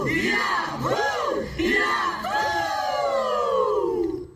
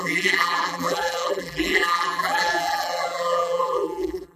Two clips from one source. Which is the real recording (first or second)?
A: first